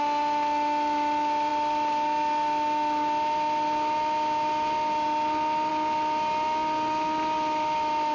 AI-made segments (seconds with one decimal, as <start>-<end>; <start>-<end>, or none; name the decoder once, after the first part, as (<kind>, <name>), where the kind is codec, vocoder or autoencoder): none